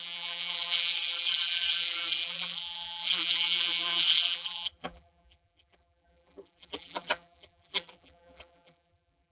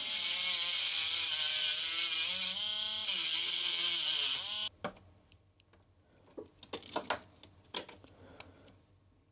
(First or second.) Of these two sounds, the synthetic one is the first